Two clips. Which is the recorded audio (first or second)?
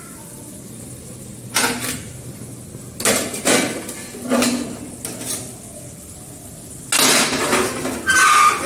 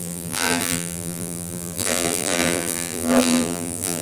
first